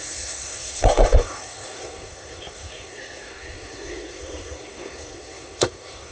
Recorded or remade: remade